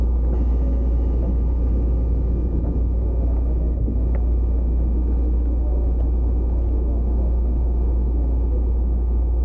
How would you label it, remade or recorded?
recorded